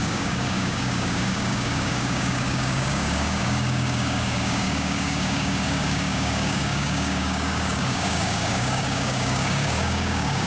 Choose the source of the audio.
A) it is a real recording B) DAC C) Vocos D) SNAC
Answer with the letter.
B